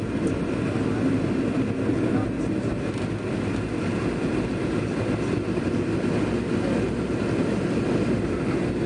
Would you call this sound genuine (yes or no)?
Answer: yes